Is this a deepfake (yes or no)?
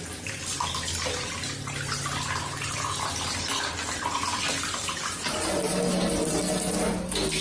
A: no